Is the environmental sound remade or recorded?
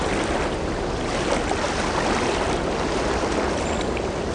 recorded